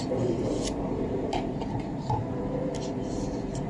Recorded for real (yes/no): no